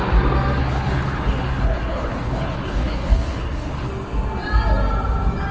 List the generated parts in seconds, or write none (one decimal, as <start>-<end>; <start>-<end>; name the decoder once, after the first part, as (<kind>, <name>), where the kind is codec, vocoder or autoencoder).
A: 0.6-3.9 (codec, HILCodec)